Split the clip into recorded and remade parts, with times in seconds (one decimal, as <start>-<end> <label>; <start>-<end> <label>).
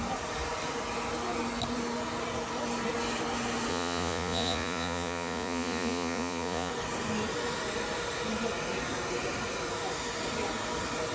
0.0-3.7 recorded; 3.7-6.7 remade; 6.7-11.1 recorded